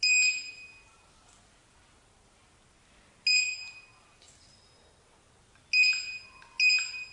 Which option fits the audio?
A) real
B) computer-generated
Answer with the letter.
A